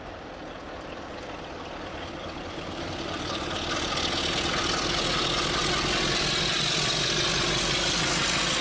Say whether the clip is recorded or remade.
recorded